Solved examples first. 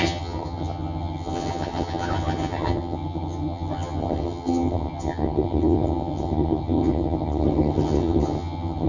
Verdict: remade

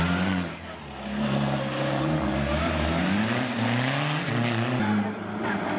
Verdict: recorded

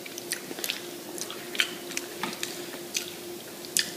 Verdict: recorded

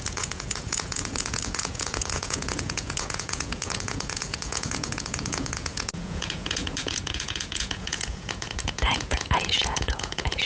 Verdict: remade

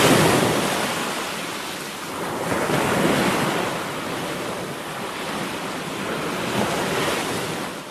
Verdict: recorded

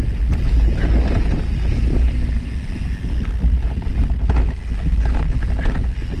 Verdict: recorded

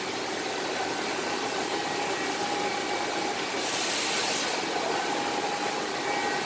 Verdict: recorded